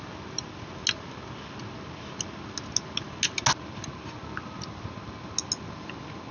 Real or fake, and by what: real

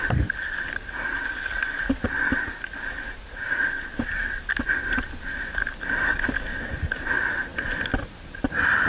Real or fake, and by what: real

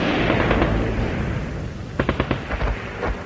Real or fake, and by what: real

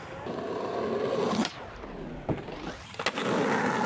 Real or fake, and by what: real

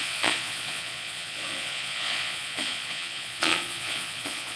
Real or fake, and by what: fake, vocoder, Vocos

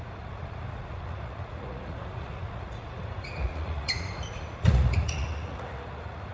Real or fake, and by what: fake, vocoder, Vocos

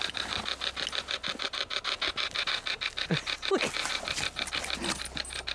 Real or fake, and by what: real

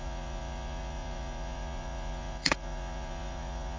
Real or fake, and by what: fake, vocoder, Vocos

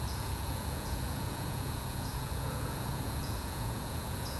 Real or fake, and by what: fake, vocoder, Vocos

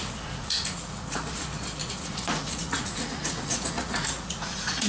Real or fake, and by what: fake, vocoder, Vocos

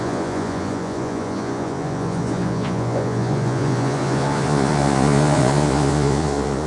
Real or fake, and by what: fake, vocoder, Vocos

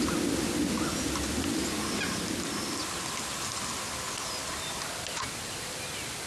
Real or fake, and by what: real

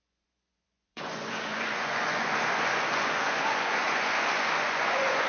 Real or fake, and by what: fake, vocoder, Vocos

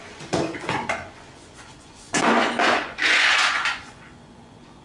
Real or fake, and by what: fake, vocoder, Vocos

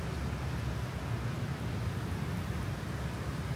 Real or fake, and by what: real